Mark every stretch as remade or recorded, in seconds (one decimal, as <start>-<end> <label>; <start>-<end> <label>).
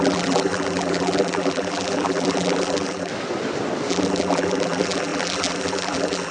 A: 0.0-3.1 remade; 3.1-3.9 recorded; 3.9-6.3 remade